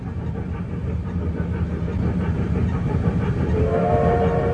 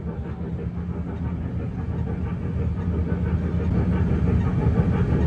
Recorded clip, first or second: second